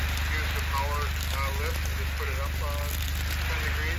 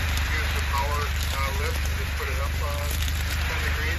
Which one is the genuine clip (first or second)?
first